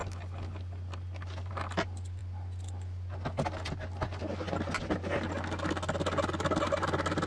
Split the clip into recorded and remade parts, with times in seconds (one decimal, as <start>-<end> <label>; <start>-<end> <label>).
0.0-7.3 recorded